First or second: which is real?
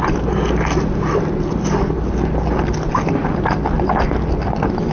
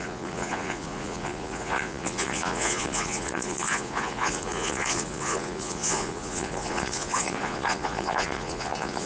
first